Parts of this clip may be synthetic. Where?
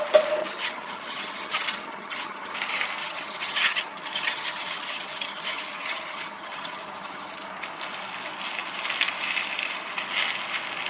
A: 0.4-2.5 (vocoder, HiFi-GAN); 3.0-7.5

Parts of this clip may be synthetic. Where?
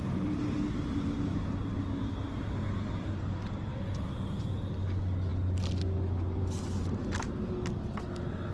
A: 0.9-1.8 (vocoder, BigVGAN v2)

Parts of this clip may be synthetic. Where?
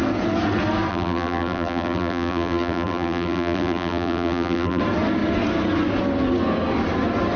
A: 0.9-4.8 (vocoder, BigVGAN v2)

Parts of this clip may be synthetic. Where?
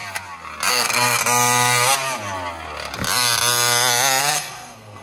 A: 0.7-1.2 (codec, SNAC); 4.2-5.0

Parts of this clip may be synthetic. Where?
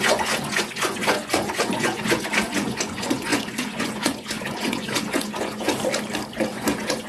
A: 0.0-5.7 (vocoder, Vocos); 6.3-7.1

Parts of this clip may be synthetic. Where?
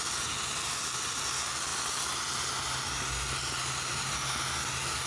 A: none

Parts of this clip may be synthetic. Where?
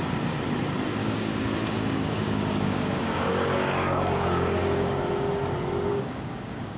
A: 1.0-5.1 (codec, DAC); 5.9-6.8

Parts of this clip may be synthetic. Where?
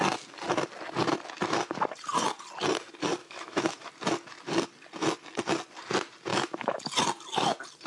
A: 3.2-3.9 (autoencoder, DAC-VAE); 6.3-6.8